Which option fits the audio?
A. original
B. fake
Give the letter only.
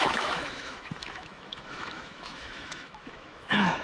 B